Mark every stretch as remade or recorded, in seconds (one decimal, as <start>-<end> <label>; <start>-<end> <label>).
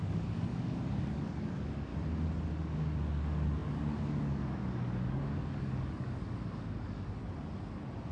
0.0-1.9 remade; 1.9-2.5 recorded; 2.5-7.2 remade; 7.2-8.1 recorded